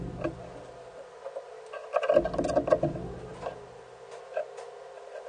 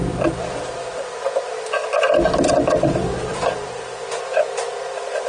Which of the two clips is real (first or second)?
first